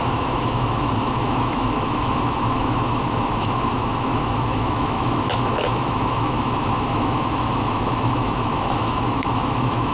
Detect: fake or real fake